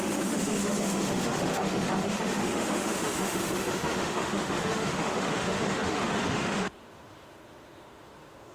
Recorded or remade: remade